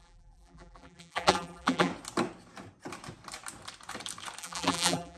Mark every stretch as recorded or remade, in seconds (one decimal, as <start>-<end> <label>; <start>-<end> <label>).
0.0-1.9 remade; 1.9-4.4 recorded; 4.4-5.2 remade